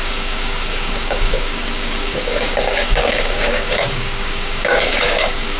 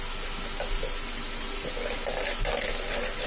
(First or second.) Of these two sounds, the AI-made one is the first